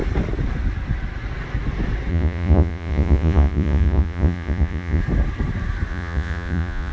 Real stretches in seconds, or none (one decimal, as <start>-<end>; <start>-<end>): 0.0-2.1; 5.0-5.9